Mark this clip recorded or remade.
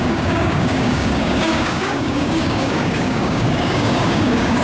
remade